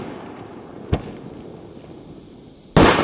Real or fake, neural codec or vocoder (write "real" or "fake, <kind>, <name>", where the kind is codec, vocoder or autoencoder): real